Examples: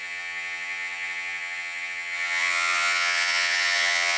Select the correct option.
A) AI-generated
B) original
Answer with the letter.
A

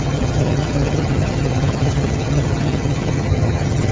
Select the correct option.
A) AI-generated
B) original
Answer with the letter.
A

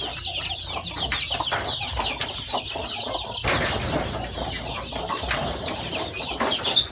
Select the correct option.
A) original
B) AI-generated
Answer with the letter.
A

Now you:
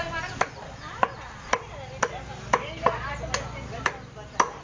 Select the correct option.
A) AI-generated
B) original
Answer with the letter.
B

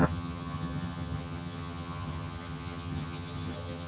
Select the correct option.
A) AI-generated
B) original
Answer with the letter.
A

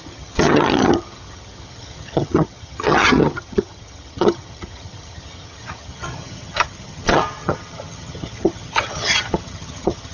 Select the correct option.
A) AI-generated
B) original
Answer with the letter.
A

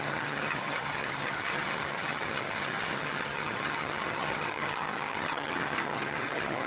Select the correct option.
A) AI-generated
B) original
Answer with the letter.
A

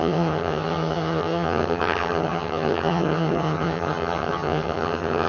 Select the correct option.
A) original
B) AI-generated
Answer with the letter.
B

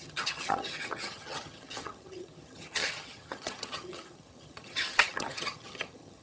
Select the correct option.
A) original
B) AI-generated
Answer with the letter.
B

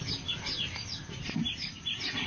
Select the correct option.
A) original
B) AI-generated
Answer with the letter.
A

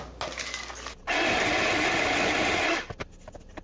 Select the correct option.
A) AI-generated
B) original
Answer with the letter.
B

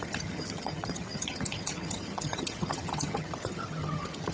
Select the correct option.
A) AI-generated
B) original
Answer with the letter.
A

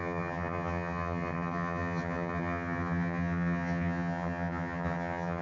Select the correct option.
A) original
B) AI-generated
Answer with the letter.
B